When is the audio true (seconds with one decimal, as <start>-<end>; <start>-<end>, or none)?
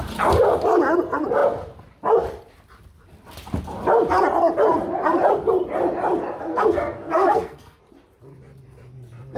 0.0-6.5; 7.8-9.4